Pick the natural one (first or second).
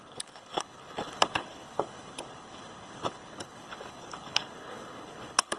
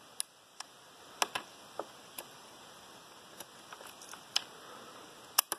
second